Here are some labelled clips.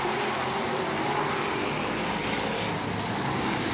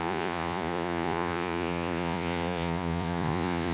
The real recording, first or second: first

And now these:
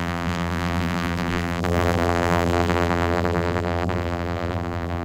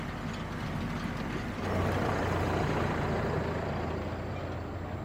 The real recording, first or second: second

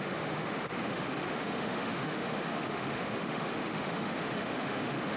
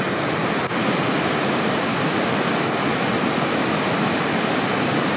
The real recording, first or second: second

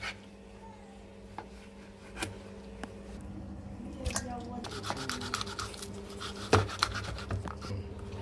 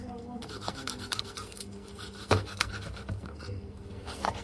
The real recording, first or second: first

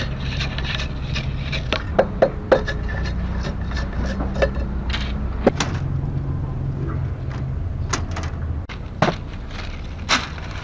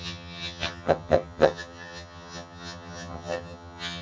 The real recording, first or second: first